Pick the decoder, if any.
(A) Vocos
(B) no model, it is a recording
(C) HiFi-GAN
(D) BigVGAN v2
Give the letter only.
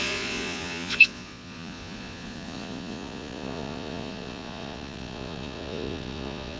A